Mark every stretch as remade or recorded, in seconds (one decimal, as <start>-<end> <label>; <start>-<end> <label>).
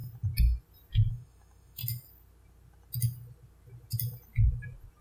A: 0.0-1.1 recorded; 1.1-1.8 remade; 1.8-5.0 recorded